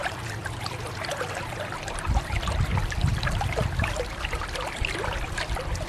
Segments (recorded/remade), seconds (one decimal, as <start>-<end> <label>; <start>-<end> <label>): 0.0-5.9 recorded